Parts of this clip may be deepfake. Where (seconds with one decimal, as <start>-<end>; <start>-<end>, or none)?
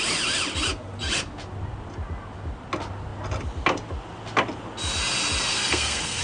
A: 5.5-6.2